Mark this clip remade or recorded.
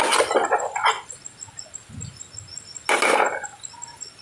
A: recorded